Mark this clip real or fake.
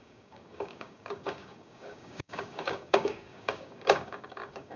fake